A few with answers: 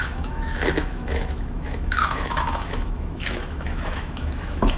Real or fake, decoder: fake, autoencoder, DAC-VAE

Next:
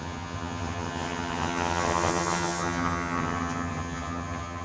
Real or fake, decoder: fake, vocoder, HiFi-GAN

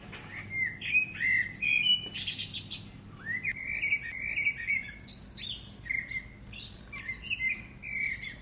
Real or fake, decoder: real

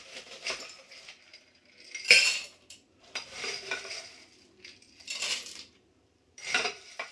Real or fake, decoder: fake, vocoder, BigVGAN v2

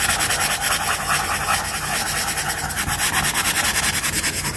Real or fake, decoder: real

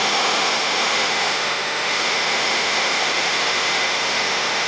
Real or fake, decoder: fake, autoencoder, DAC-VAE